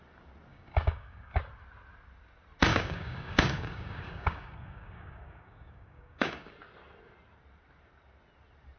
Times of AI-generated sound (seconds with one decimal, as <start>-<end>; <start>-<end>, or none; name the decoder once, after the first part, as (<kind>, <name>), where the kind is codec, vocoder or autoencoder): 0.5-1.4 (codec, DAC); 2.7-6.5